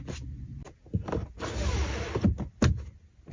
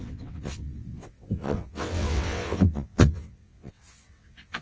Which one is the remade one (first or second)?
second